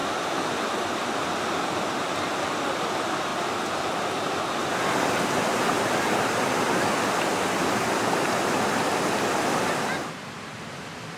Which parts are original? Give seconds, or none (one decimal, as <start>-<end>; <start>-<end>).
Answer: 0.0-10.0; 10.7-11.2

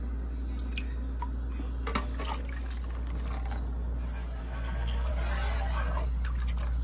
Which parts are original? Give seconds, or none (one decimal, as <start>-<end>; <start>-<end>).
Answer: 0.0-4.4; 5.1-6.8

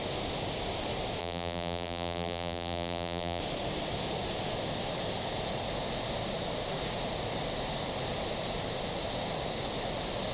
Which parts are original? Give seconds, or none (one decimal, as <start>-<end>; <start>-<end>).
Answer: 0.0-1.2; 3.4-10.3

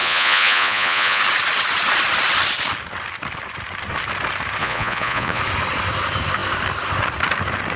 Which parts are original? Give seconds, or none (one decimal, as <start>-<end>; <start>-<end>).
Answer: 1.2-4.6; 5.4-7.8

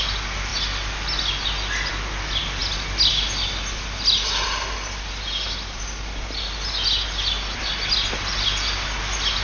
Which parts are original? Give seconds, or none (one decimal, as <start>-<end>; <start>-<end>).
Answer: 0.0-9.4